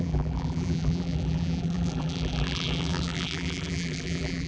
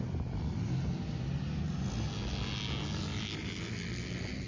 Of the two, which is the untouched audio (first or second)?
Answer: second